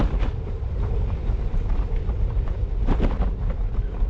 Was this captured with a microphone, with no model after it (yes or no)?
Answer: no